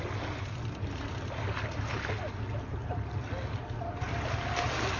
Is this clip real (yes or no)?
yes